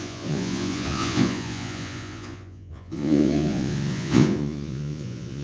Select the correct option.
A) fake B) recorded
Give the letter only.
A